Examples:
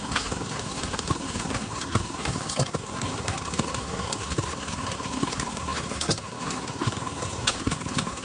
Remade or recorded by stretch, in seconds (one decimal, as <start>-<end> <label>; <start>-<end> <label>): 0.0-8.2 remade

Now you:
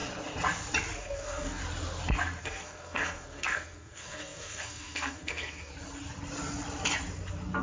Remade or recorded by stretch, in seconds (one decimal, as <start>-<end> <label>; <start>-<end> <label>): 0.0-1.0 recorded; 1.0-1.6 remade; 1.6-2.4 recorded; 2.4-5.7 remade; 5.7-7.6 recorded

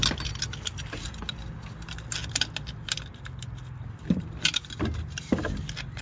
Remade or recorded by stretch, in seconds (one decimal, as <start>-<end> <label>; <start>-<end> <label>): 0.0-6.0 recorded

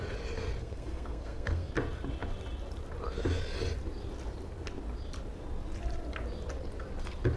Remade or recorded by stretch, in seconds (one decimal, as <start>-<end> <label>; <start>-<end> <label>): 0.0-0.6 recorded; 0.6-1.7 remade; 1.7-7.4 recorded

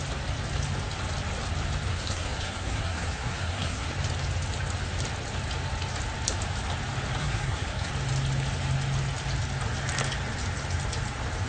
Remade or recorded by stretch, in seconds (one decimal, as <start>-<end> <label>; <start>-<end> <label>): 0.0-1.9 recorded; 1.9-3.9 remade; 3.9-7.2 recorded; 7.2-7.9 remade; 7.9-11.5 recorded

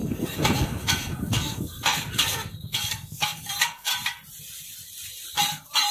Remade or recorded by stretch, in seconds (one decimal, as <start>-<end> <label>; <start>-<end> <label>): 0.0-3.9 remade; 3.9-5.9 recorded